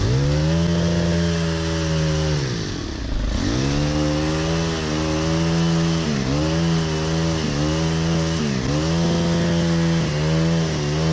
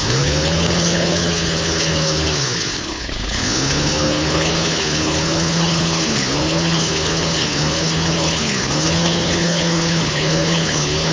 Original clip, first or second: first